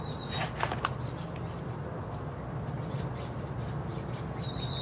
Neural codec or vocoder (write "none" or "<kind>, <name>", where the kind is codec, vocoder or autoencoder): none